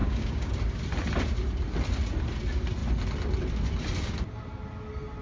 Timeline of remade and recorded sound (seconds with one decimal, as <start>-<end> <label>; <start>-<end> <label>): 0.0-0.5 remade; 0.5-5.2 recorded